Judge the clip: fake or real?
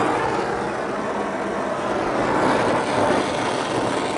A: real